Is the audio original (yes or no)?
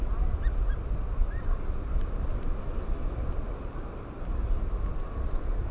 yes